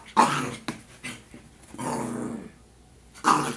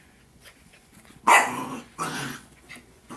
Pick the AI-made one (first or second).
second